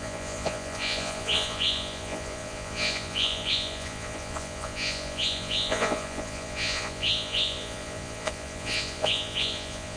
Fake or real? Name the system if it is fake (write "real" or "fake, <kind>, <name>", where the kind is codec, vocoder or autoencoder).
fake, vocoder, Vocos